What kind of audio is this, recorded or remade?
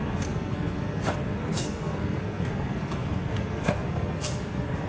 remade